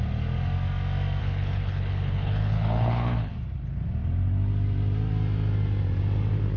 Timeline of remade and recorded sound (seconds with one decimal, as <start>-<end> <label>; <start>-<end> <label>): 0.0-1.2 recorded; 1.2-3.3 remade; 3.3-6.6 recorded